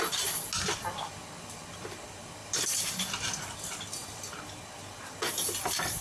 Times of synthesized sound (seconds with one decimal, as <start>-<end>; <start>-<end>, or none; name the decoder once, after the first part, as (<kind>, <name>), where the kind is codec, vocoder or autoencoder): none